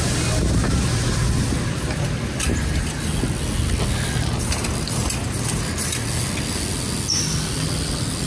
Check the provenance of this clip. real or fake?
real